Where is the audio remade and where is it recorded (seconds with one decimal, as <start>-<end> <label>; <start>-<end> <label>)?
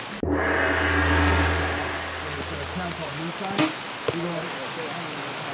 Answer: 0.0-5.5 recorded